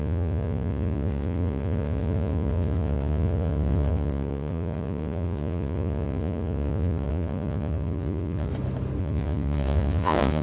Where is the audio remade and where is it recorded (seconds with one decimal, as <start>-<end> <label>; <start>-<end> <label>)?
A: 0.0-8.5 remade; 8.5-9.0 recorded; 9.0-10.4 remade